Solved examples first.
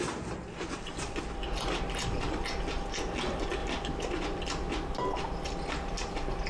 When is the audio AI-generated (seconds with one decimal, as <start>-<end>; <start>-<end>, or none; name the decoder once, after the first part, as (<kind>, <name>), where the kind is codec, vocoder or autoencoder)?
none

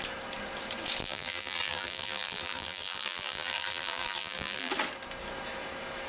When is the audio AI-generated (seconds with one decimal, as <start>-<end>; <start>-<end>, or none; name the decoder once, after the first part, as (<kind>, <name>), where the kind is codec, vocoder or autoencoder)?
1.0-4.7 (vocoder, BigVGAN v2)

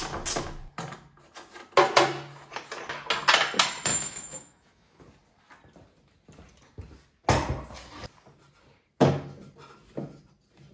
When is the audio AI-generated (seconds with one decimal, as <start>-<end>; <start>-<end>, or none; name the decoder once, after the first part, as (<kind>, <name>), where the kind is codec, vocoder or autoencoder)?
3.9-5.0 (autoencoder, DAC-VAE)

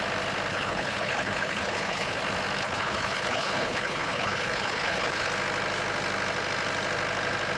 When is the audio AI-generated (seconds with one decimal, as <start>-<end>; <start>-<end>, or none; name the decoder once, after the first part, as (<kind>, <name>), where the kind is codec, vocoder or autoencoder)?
0.5-2.2 (codec, HILCodec); 2.6-5.3

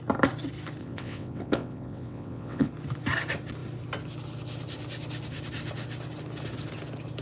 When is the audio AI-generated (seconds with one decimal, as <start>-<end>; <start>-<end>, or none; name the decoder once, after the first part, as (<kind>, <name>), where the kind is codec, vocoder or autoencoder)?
0.8-2.7 (vocoder, WaveNeXt)

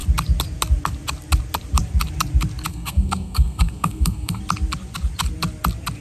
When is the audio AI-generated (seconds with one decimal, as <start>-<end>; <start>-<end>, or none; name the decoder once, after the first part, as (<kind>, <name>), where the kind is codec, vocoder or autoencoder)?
2.7-4.4 (codec, SNAC)